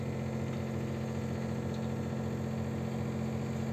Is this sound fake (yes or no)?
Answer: no